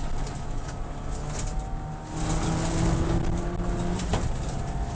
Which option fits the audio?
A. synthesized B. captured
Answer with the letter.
B